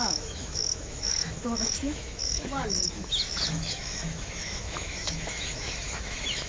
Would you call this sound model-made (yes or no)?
yes